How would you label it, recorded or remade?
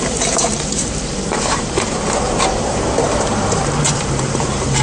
remade